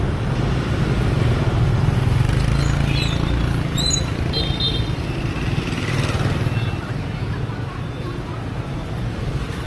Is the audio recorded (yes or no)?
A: yes